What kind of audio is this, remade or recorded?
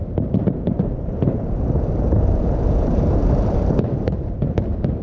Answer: remade